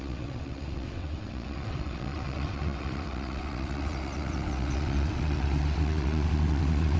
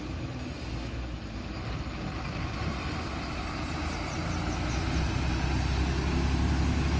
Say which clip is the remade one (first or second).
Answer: first